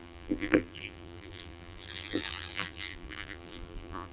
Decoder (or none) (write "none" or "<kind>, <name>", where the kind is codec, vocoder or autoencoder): vocoder, BigVGAN v2